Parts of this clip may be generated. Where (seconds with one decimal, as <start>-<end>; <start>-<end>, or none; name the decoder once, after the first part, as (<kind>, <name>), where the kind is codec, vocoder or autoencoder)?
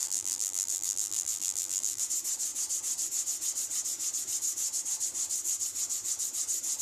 0.0-2.0 (vocoder, BigVGAN v2)